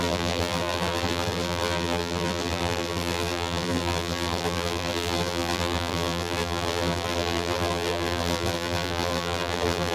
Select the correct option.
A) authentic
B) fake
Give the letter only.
B